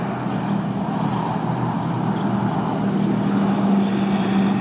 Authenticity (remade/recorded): recorded